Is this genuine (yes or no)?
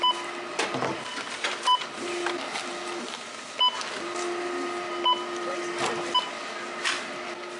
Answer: yes